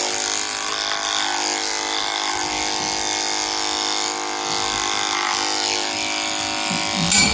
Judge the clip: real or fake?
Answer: real